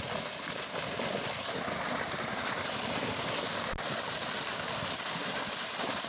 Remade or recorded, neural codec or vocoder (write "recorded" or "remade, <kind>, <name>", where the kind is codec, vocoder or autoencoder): recorded